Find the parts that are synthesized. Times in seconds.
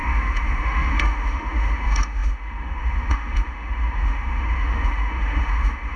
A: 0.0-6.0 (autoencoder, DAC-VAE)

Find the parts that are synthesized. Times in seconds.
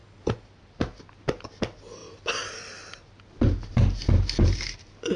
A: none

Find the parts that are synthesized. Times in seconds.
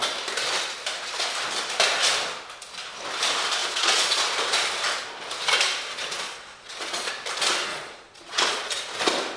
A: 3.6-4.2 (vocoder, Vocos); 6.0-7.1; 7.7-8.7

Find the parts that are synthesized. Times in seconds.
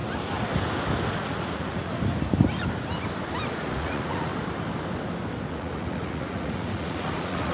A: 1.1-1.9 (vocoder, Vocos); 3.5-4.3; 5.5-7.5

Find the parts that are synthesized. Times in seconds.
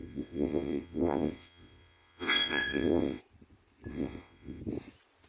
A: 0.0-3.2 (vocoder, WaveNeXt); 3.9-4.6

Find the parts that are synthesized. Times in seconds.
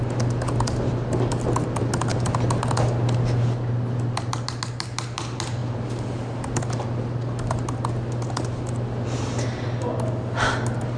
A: none